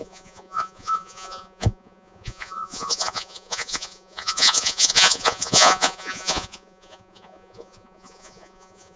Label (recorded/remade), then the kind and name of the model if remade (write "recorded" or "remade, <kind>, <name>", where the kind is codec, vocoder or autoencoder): remade, vocoder, Vocos